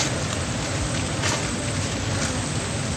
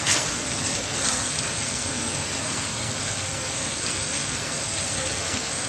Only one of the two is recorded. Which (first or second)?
first